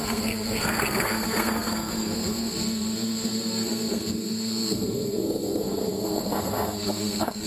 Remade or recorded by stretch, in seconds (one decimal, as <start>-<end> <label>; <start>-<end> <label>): 0.0-7.5 remade

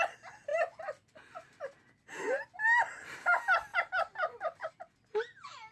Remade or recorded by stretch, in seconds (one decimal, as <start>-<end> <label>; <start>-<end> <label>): 0.0-5.7 recorded

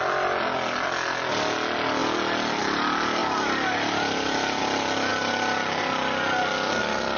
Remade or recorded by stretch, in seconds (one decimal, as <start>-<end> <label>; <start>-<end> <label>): 0.0-3.2 recorded; 3.2-4.6 remade; 4.6-7.2 recorded